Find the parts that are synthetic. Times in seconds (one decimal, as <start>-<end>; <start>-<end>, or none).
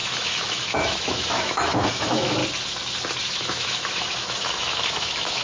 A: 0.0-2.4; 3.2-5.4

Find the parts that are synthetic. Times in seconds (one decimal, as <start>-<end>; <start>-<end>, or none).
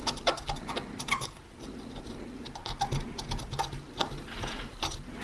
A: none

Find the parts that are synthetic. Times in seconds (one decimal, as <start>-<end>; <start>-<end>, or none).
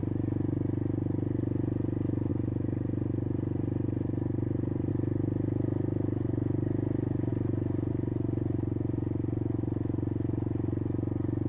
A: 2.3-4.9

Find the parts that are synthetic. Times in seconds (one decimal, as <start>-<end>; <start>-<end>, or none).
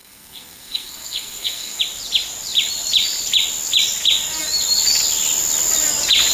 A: 0.0-1.8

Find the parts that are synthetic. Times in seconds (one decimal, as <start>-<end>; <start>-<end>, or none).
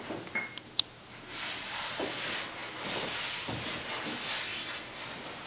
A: none